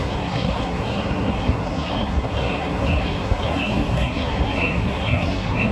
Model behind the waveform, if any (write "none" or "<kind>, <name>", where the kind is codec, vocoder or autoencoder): codec, SNAC